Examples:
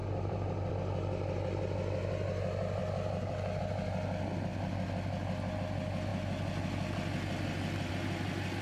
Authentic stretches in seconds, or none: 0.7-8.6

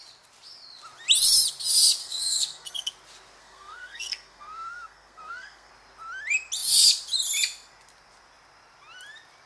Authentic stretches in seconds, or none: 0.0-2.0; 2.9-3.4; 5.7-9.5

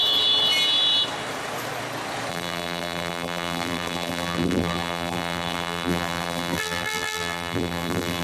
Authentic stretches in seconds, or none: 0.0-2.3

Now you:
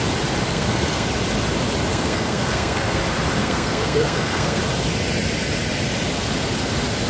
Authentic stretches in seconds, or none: 0.0-0.5; 1.1-1.9; 3.0-3.4; 4.6-7.1

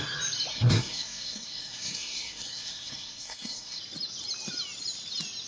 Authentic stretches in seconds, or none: 0.0-0.5; 3.8-5.5